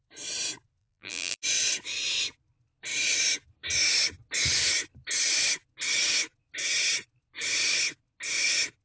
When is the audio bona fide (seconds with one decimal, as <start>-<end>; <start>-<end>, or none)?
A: 0.0-0.8; 1.4-8.8